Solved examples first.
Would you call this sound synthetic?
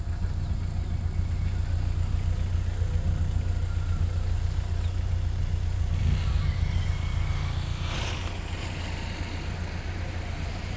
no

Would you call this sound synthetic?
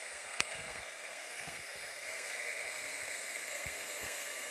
yes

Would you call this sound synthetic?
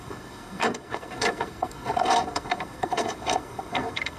yes